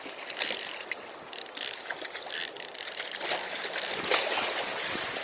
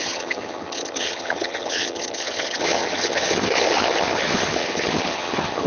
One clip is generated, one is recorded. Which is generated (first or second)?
second